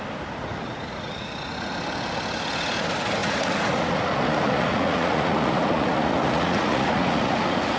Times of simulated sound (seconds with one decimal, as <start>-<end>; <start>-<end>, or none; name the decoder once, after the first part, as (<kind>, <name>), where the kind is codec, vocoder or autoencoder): 0.5-1.7 (vocoder, Vocos); 3.2-7.8